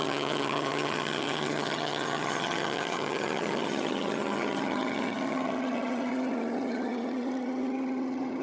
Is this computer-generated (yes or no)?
yes